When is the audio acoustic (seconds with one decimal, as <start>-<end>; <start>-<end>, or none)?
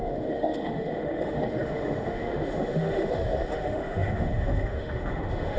none